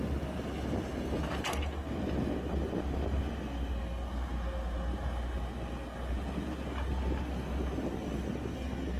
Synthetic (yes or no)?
no